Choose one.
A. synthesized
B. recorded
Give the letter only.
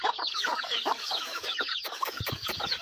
A